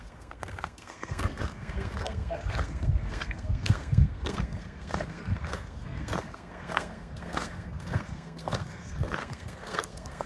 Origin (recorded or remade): remade